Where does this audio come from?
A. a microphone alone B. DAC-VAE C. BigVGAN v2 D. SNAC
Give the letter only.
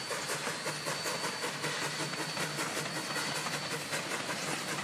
A